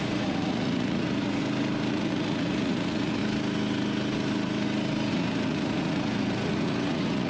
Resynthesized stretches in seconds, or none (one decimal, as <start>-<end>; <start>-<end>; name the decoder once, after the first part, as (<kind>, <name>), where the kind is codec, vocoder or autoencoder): 0.0-1.4 (vocoder, Vocos); 1.9-3.2; 5.1-7.3